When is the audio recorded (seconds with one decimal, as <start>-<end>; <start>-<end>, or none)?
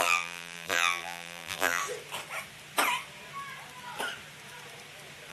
1.8-5.3